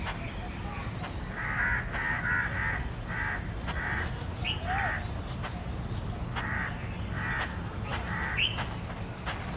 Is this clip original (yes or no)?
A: yes